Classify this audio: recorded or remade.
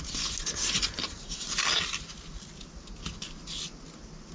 recorded